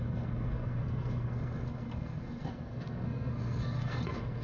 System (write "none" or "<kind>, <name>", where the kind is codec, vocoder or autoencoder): codec, SNAC